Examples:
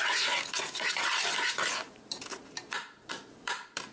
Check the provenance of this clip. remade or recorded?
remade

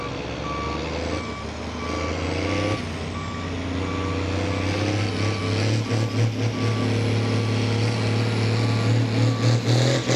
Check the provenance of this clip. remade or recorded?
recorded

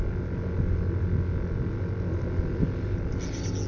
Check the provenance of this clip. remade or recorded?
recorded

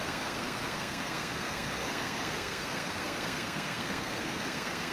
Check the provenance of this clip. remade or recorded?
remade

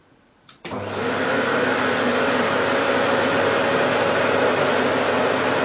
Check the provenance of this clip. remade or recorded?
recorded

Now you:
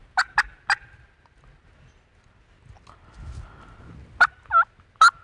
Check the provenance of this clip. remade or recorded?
recorded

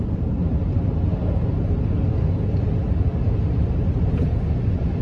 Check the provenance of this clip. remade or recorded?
recorded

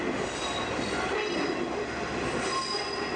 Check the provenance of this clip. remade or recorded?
recorded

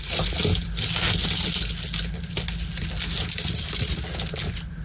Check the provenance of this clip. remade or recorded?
recorded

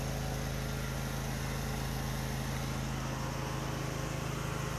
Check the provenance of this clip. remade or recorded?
recorded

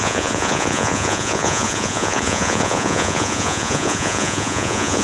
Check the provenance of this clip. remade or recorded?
remade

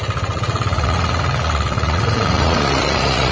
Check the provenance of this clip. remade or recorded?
remade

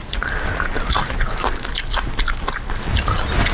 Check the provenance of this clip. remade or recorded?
recorded